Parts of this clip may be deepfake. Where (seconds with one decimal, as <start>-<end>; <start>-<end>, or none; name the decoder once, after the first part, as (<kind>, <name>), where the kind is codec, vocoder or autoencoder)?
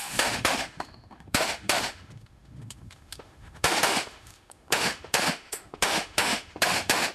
0.0-7.1 (autoencoder, DAC-VAE)